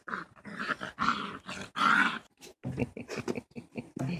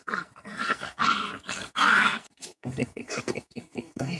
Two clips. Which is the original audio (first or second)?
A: first